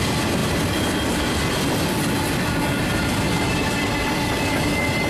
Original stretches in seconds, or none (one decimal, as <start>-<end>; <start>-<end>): 0.0-5.1